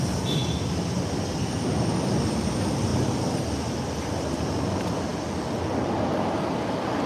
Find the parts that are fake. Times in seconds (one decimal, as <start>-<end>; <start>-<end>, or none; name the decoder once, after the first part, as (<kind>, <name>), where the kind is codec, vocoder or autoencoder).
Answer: none